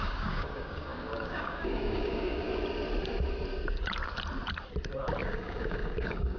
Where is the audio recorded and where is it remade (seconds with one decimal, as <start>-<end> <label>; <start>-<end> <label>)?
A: 0.0-2.5 remade; 2.5-5.2 recorded; 5.2-6.4 remade